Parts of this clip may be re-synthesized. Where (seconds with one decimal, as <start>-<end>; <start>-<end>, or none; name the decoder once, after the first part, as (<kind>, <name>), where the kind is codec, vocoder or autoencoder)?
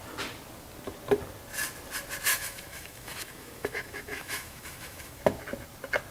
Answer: 2.3-5.2 (autoencoder, DAC-VAE)